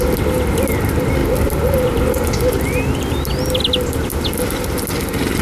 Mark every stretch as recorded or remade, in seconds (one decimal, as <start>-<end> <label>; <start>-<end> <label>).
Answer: 0.0-1.2 recorded; 1.2-3.6 remade; 3.6-5.4 recorded